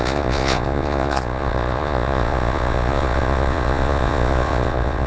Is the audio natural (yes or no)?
no